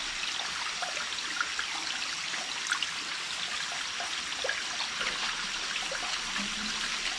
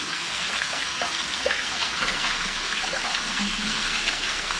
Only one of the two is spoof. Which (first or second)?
second